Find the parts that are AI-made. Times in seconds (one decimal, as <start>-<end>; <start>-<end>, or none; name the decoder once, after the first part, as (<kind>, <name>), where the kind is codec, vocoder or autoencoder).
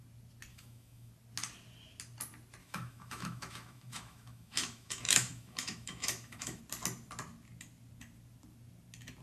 0.5-1.1 (autoencoder, DAC-VAE); 2.6-6.6